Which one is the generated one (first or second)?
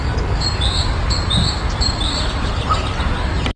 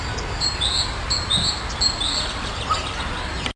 first